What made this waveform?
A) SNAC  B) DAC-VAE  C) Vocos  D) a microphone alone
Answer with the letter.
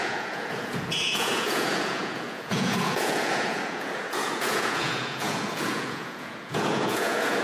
C